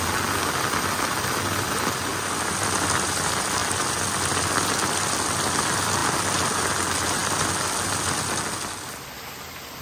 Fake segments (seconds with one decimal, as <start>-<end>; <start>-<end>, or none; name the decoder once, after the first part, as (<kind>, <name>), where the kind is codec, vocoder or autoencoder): none